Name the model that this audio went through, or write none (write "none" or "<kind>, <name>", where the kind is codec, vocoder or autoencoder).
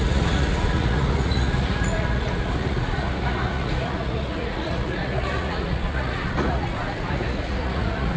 vocoder, Vocos